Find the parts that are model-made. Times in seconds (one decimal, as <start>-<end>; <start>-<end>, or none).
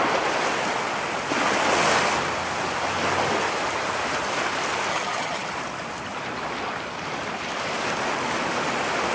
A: 4.9-5.5